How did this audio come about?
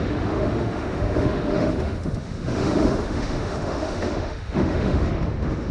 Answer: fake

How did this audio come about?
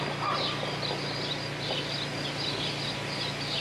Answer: real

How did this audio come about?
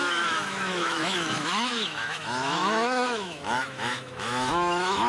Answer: fake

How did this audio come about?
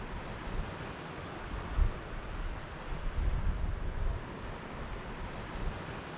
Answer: real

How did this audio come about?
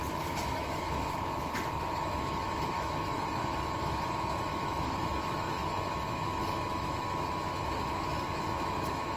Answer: fake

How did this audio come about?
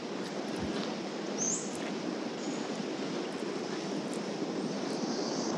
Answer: real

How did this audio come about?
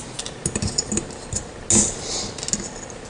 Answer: real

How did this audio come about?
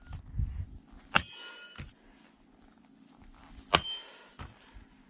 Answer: real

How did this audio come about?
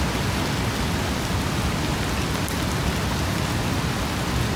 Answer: real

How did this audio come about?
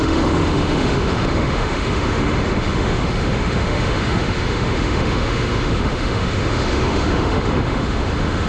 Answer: fake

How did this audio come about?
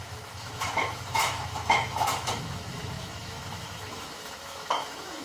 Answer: fake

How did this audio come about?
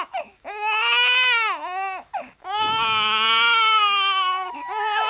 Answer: fake